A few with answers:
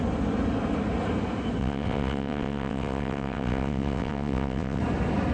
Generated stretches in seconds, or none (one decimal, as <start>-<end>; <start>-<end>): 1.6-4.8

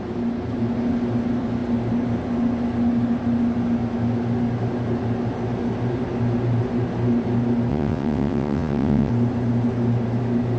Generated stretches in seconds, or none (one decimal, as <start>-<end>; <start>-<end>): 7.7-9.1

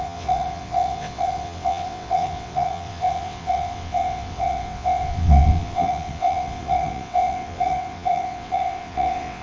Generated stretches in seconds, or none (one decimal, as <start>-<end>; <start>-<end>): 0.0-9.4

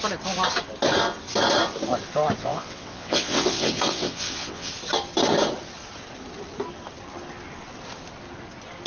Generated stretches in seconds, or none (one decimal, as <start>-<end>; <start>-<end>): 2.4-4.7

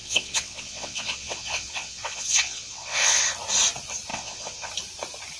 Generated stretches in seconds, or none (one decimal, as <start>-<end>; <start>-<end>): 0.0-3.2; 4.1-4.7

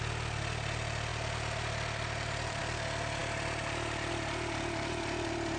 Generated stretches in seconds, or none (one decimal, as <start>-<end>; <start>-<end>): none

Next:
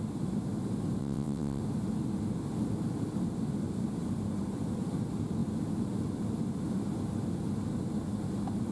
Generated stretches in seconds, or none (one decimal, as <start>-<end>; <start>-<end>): 1.0-1.6

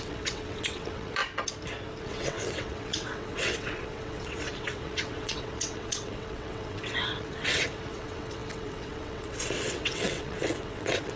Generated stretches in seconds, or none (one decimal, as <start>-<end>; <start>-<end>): 0.0-1.2; 2.0-11.2